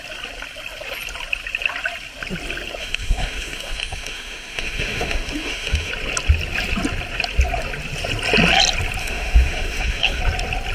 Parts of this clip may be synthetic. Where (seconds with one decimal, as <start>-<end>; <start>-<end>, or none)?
2.8-5.9; 9.0-10.2